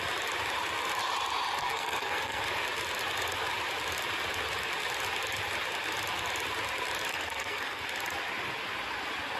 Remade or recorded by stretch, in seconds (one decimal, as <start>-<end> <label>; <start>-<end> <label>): 0.0-1.6 recorded; 1.6-2.4 remade; 2.4-7.1 recorded; 7.1-7.8 remade; 7.8-9.4 recorded